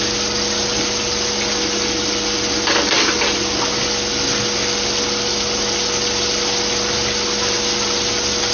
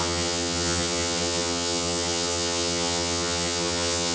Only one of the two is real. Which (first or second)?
first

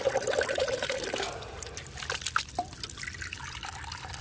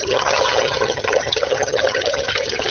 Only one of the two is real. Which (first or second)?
first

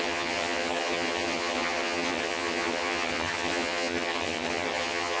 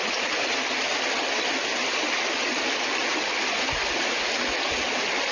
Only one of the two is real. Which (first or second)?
second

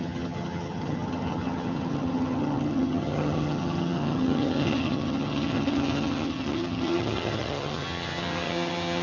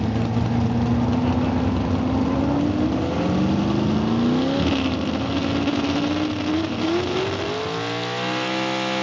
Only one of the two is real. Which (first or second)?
second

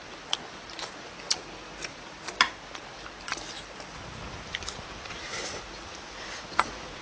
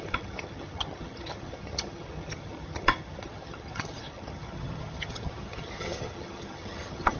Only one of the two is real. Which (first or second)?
first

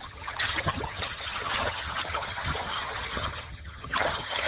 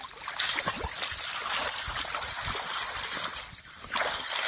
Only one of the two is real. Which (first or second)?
second